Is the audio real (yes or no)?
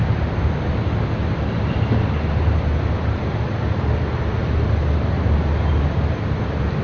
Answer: yes